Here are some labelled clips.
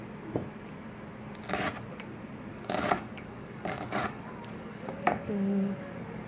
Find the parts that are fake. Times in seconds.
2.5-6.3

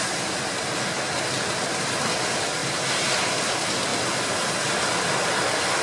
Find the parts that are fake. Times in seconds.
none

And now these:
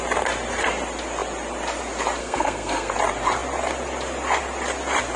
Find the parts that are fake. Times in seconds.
2.2-2.9

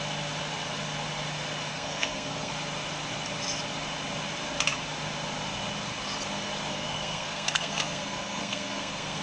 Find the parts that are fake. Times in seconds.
1.7-2.5; 6.7-9.2

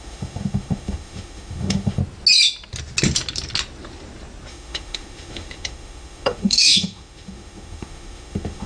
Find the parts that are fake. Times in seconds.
0.0-2.0; 4.5-8.7

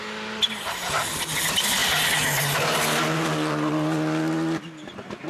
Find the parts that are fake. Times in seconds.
none

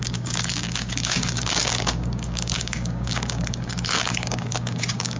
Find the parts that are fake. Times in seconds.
0.0-5.2

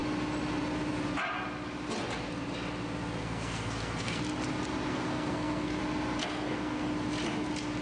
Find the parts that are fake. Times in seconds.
3.2-4.2; 4.9-5.8; 6.2-6.9